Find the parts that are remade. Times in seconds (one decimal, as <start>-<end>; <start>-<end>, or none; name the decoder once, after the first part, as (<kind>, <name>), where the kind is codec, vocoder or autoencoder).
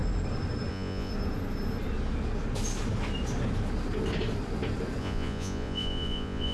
0.7-1.1 (vocoder, Vocos); 5.0-6.5